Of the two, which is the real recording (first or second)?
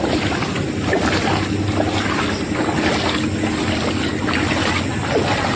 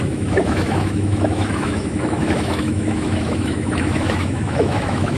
first